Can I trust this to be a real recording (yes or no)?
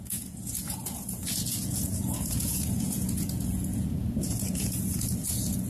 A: no